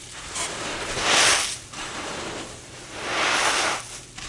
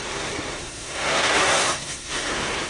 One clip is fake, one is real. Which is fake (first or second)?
second